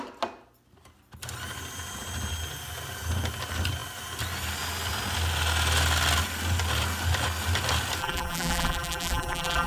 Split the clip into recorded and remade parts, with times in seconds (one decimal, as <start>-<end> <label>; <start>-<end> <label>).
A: 0.0-8.0 recorded; 8.0-9.7 remade